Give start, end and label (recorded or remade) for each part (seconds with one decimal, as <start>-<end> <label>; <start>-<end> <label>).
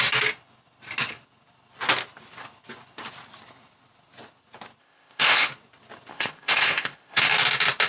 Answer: 0.0-4.8 recorded; 4.8-5.5 remade; 5.5-6.1 recorded; 6.1-7.2 remade; 7.2-7.9 recorded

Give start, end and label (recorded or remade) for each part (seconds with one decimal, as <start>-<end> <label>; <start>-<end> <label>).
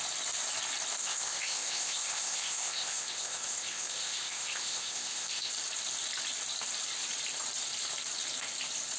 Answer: 0.0-1.0 recorded; 1.0-5.5 remade; 5.5-9.0 recorded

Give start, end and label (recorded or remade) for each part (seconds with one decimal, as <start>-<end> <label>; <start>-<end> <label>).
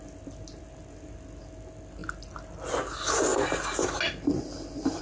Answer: 0.0-5.0 recorded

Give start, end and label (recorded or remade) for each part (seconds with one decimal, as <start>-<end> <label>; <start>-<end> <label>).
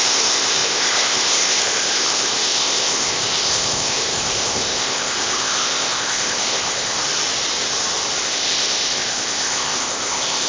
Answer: 0.0-7.0 remade; 7.0-8.2 recorded; 8.2-10.5 remade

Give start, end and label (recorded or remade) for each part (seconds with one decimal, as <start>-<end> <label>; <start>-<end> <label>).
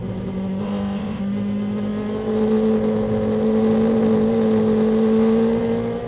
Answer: 0.0-0.6 recorded; 0.6-1.2 remade; 1.2-6.1 recorded